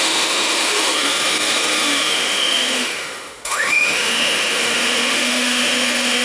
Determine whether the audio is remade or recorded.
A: remade